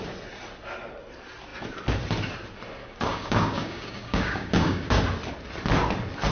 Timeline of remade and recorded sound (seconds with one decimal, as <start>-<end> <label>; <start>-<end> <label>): 0.0-2.8 recorded; 2.8-5.0 remade; 5.0-6.3 recorded